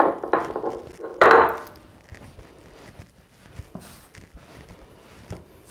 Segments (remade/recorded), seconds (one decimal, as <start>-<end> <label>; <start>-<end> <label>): 0.0-5.7 recorded